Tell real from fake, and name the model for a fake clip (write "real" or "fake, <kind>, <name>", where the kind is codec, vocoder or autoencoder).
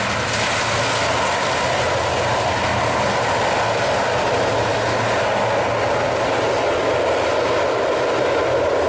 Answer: real